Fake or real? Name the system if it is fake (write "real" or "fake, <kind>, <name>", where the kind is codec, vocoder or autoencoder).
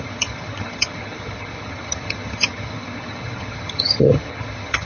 fake, vocoder, HiFi-GAN